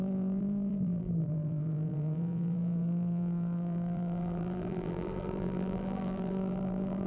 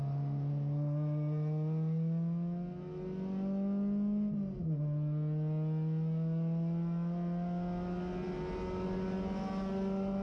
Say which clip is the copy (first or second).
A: first